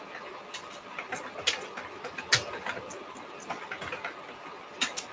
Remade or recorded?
recorded